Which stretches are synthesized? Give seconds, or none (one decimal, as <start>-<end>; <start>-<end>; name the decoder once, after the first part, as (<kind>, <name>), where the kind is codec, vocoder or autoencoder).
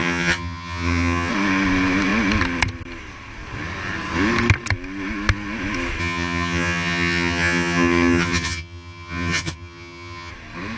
0.0-1.3 (vocoder, HiFi-GAN); 6.0-10.3